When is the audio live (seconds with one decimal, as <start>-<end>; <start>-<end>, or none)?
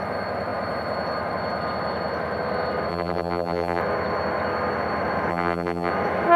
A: 0.0-2.9; 3.8-5.3; 5.9-6.4